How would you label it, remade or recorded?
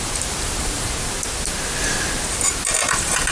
recorded